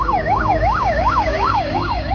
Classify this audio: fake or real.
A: fake